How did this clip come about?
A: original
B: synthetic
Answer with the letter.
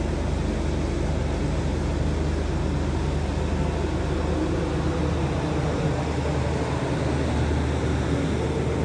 A